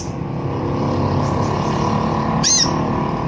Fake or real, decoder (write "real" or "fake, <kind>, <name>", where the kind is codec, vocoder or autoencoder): real